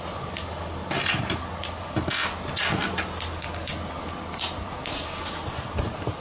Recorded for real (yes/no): yes